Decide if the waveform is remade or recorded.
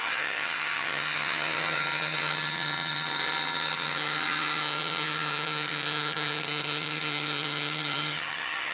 remade